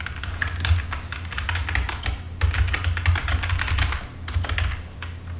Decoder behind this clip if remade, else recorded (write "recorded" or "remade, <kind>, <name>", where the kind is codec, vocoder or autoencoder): recorded